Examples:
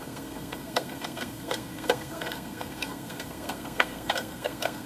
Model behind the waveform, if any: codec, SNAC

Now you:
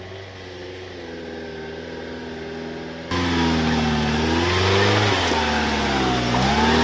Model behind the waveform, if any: none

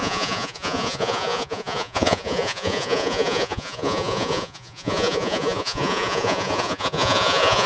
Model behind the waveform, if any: vocoder, Vocos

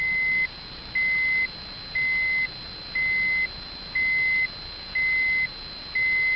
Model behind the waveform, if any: none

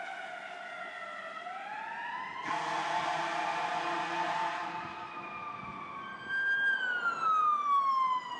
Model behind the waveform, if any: none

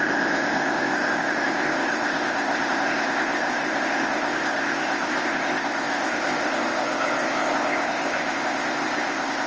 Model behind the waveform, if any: codec, ZipCodec